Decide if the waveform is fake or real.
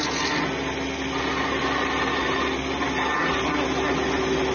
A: real